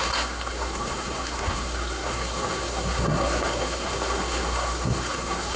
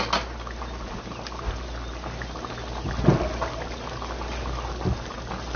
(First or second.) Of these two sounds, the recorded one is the second